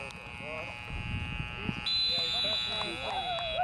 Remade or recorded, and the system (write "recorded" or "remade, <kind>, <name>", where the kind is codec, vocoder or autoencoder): recorded